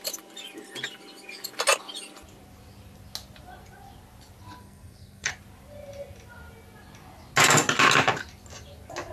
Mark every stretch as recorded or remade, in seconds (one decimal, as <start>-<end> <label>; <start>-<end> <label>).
0.0-4.6 recorded; 4.6-5.3 remade; 5.3-9.1 recorded